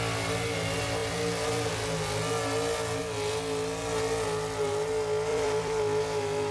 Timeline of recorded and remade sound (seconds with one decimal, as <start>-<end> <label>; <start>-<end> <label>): 0.0-5.3 recorded; 5.3-5.8 remade; 5.8-6.5 recorded